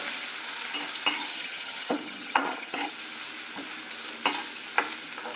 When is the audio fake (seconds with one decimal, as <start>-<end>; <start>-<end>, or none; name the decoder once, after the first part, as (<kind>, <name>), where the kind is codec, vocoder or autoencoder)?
1.3-2.9 (vocoder, HiFi-GAN)